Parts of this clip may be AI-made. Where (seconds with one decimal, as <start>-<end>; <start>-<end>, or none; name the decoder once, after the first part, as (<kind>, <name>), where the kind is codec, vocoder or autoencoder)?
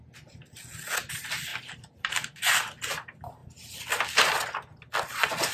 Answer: 1.5-2.1 (vocoder, BigVGAN v2)